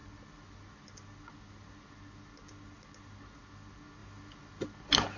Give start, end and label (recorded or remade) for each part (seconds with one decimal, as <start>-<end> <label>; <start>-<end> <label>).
0.0-5.2 recorded

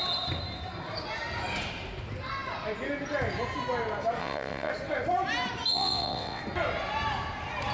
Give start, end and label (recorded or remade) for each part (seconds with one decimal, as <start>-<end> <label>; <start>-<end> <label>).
0.0-4.2 recorded; 4.2-4.7 remade; 4.7-5.7 recorded; 5.7-6.4 remade; 6.4-7.7 recorded

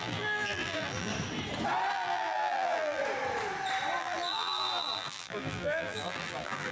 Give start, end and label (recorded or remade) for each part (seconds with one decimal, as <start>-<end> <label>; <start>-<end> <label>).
0.0-1.1 remade; 1.1-1.9 recorded; 1.9-3.0 remade; 3.0-4.0 recorded; 4.0-6.7 remade

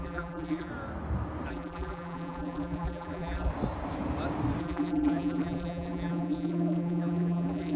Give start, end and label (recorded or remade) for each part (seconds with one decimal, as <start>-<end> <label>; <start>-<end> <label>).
0.0-0.7 remade; 0.7-1.5 recorded; 1.5-3.5 remade; 3.5-4.6 recorded; 4.6-7.8 remade

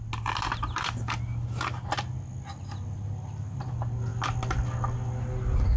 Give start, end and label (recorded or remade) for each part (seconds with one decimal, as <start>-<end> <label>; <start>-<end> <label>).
0.0-5.8 recorded

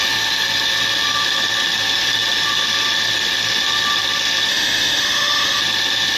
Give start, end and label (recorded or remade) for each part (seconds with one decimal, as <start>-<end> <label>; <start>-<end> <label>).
0.0-4.5 recorded; 4.5-5.6 remade; 5.6-6.2 recorded

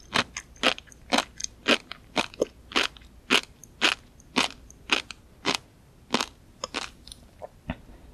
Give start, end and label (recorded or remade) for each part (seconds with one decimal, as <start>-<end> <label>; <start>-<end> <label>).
0.0-1.4 recorded; 1.4-2.2 remade; 2.2-8.1 recorded